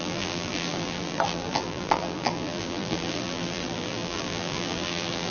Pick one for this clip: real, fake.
fake